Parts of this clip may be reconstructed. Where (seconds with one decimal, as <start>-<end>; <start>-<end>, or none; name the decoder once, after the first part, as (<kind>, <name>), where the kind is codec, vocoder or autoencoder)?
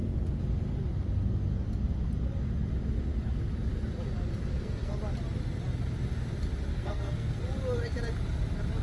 4.5-5.0 (codec, SNAC); 6.7-7.4